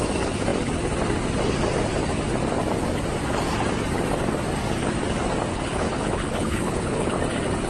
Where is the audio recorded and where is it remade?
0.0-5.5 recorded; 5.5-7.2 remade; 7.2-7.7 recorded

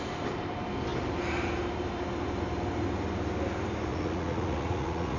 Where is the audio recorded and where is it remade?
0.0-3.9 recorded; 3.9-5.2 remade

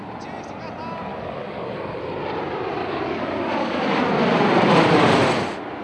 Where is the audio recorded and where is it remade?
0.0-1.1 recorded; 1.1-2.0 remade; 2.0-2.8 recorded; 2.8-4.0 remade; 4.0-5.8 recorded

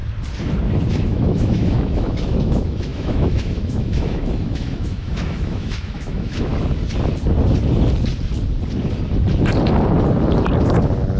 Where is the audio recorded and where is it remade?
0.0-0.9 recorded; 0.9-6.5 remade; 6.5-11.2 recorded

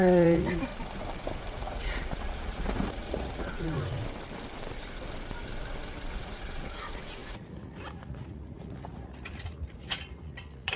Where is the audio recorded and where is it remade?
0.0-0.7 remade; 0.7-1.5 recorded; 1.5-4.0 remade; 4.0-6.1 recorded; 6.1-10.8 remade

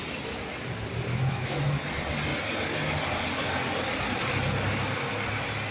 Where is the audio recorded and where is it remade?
0.0-1.1 recorded; 1.1-1.8 remade; 1.8-5.7 recorded

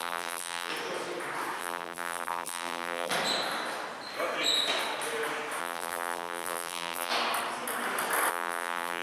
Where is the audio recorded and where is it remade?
0.0-0.7 remade; 0.7-1.6 recorded; 1.6-3.1 remade; 3.1-5.6 recorded; 5.6-7.1 remade; 7.1-8.3 recorded; 8.3-9.0 remade